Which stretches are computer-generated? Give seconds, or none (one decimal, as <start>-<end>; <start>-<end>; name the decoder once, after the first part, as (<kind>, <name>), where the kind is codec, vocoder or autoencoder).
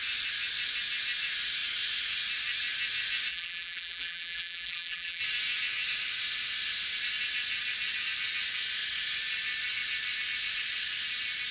3.3-5.2 (vocoder, BigVGAN v2)